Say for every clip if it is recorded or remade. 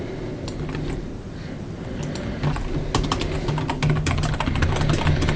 recorded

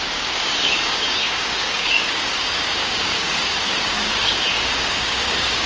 remade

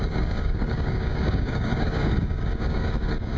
remade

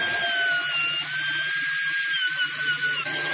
recorded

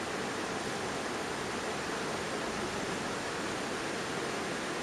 recorded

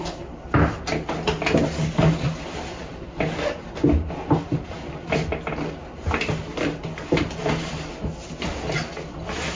recorded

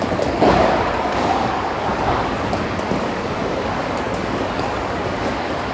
remade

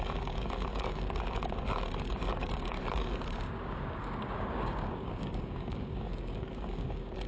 remade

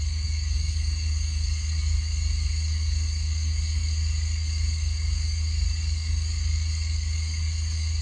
remade